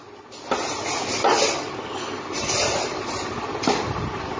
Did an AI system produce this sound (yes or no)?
no